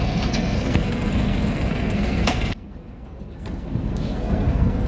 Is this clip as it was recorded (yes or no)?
no